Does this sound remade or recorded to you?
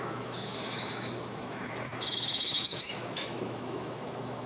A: remade